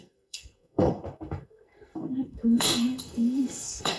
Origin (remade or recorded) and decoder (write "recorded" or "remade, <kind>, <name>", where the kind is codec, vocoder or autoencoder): remade, codec, SNAC